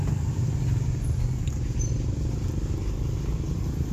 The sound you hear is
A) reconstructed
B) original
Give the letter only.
B